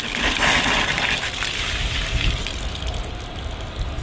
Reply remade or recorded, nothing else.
recorded